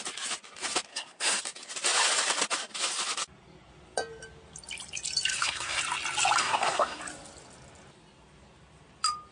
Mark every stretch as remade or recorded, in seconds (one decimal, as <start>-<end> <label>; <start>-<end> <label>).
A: 0.0-0.9 recorded; 0.9-1.4 remade; 1.4-5.3 recorded; 5.3-5.8 remade; 5.8-6.4 recorded; 6.4-7.0 remade; 7.0-9.3 recorded